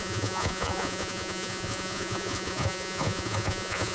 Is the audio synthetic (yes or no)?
yes